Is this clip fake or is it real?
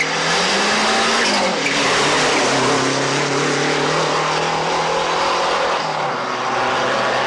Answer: real